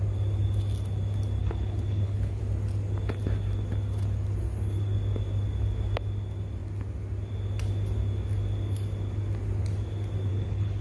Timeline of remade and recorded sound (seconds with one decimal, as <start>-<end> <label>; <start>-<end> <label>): 0.0-1.4 recorded; 1.4-2.4 remade; 2.4-10.3 recorded; 10.3-10.8 remade